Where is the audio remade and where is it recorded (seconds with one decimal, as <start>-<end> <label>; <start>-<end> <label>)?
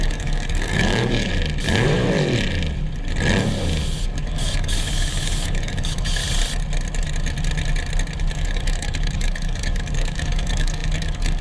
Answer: 0.0-1.3 remade; 1.3-4.0 recorded; 4.0-6.2 remade; 6.2-8.3 recorded; 8.3-11.4 remade